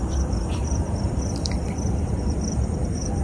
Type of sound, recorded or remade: remade